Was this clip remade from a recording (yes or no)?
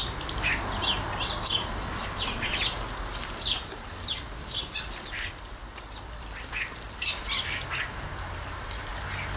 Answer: no